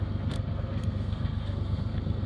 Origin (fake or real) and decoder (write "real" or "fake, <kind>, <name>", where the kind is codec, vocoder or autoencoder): fake, codec, SNAC